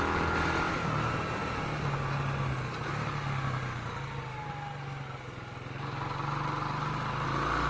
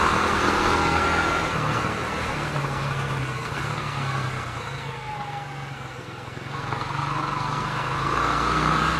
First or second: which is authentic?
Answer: first